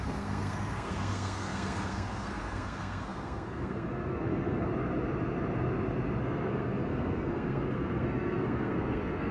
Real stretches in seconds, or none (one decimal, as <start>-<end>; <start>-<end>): 4.7-6.2